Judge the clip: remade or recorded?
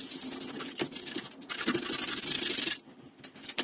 remade